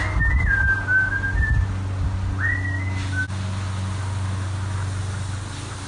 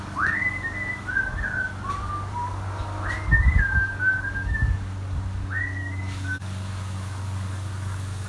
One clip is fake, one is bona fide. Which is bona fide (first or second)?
first